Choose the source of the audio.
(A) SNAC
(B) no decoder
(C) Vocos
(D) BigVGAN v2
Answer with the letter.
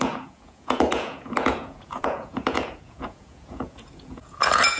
C